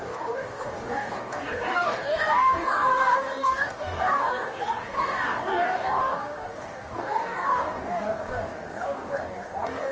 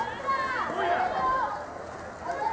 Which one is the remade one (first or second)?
first